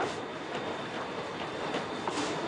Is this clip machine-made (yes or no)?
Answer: no